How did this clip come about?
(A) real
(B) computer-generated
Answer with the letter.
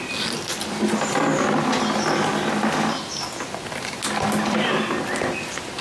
A